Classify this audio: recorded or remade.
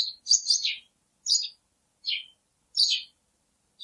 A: recorded